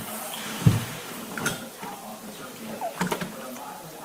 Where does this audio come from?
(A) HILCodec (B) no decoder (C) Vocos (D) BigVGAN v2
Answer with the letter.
D